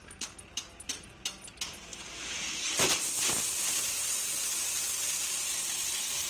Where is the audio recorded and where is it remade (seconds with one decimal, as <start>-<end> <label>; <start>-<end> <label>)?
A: 0.0-6.3 recorded